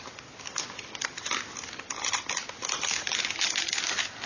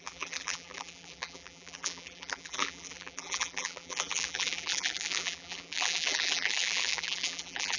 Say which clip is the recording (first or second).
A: first